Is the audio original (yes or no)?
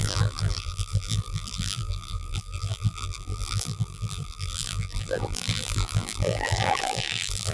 no